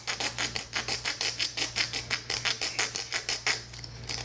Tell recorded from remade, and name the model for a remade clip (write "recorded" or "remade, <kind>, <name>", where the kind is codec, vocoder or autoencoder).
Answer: recorded